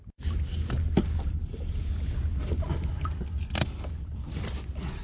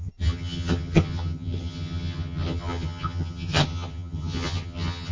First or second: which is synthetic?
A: second